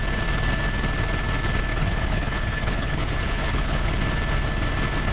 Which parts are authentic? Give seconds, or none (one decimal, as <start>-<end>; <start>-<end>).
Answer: 0.0-1.7; 4.0-5.1

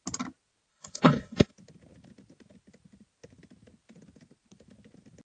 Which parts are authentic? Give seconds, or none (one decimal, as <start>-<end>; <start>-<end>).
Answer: 0.0-0.7; 1.5-5.4

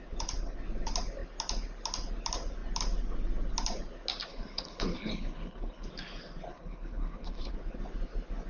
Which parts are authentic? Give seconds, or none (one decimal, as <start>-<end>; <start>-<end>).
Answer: 0.0-4.3; 5.9-6.5; 7.5-8.5

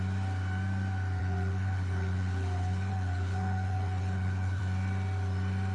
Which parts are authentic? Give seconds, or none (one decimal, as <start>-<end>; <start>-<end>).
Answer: 0.0-1.2; 4.6-5.7

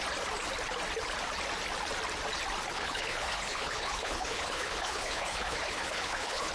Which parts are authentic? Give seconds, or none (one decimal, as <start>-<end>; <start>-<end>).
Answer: 0.0-2.7